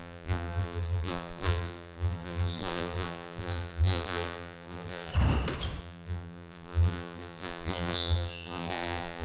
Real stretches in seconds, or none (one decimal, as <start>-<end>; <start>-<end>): 5.1-5.8